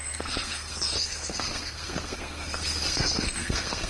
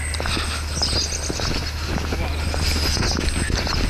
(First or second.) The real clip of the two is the second